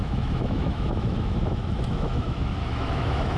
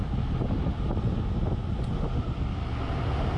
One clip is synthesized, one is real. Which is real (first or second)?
second